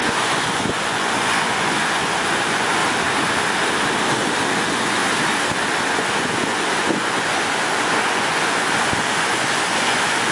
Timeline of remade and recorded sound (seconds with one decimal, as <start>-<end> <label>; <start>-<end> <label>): 0.0-2.8 remade; 2.8-4.6 recorded; 4.6-5.0 remade; 5.0-5.9 recorded; 5.9-10.3 remade